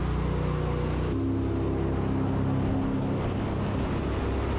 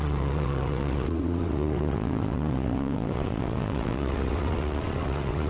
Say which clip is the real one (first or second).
first